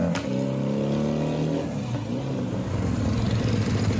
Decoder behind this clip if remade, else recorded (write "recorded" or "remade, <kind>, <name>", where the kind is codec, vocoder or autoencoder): recorded